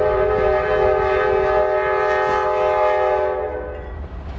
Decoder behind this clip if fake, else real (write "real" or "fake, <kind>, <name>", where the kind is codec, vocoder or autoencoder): real